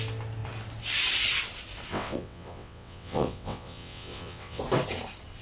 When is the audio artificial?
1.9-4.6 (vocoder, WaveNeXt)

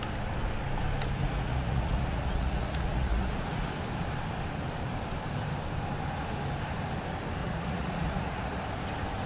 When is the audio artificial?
1.2-3.7 (vocoder, Vocos); 7.4-8.6

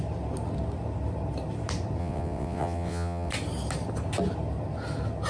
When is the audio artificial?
2.0-3.3 (vocoder, WaveNeXt)

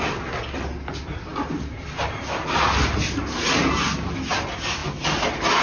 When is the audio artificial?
none

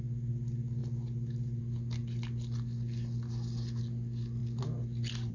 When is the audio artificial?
none

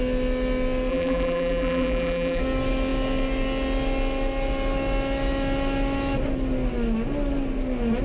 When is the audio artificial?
0.9-2.4 (vocoder, BigVGAN v2)